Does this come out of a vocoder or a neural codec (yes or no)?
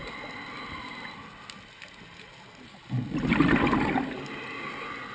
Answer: no